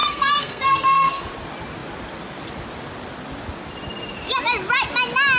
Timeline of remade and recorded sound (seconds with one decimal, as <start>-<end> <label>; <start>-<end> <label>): 0.0-1.3 remade; 1.3-5.4 recorded